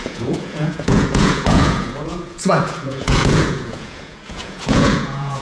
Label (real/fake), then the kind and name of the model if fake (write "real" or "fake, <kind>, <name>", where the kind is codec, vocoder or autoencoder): fake, vocoder, Vocos